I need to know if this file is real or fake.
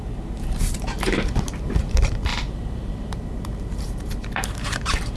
fake